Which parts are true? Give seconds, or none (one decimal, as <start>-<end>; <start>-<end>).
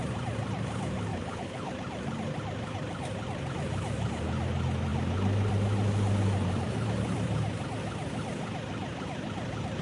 0.0-1.1; 1.7-9.8